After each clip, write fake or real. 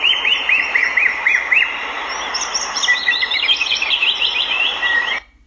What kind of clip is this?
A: fake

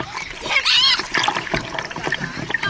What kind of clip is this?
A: fake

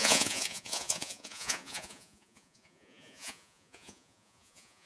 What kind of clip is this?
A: fake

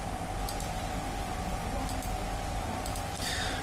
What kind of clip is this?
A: fake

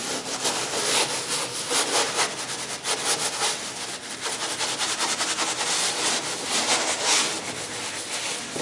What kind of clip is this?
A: real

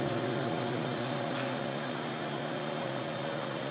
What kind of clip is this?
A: fake